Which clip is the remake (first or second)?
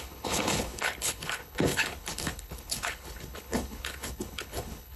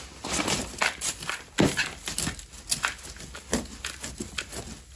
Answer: first